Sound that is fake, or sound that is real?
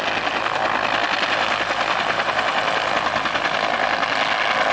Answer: real